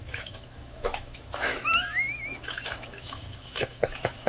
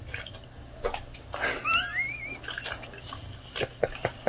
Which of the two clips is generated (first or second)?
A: first